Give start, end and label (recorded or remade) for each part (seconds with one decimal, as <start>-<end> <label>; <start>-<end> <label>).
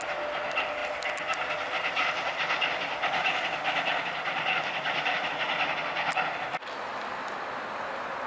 0.0-8.3 recorded